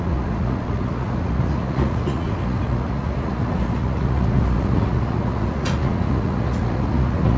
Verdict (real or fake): fake